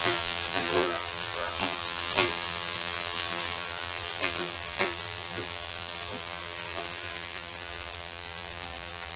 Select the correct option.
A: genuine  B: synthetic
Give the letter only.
B